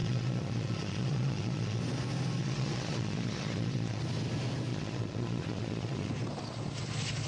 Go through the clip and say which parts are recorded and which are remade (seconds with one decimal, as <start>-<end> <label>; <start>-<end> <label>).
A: 0.0-1.8 remade; 1.8-2.4 recorded; 2.4-4.0 remade; 4.0-4.7 recorded; 4.7-6.1 remade; 6.1-7.3 recorded